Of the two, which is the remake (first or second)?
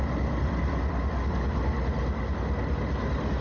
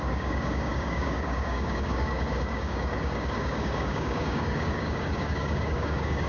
second